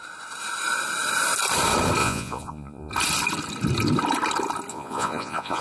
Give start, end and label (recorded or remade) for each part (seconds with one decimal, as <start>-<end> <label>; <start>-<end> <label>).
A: 0.0-2.0 recorded; 2.0-2.9 remade; 2.9-4.7 recorded; 4.7-5.6 remade